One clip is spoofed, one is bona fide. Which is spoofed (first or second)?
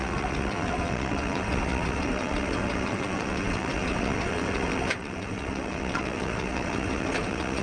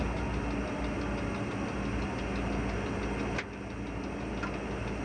first